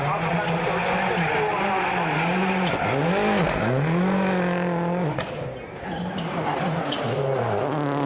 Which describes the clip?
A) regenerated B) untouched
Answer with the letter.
B